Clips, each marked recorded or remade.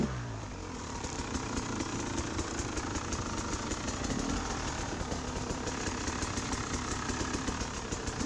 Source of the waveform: remade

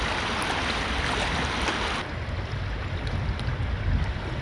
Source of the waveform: recorded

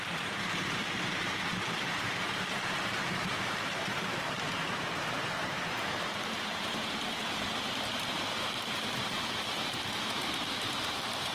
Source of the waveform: remade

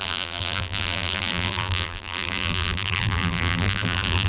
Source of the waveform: remade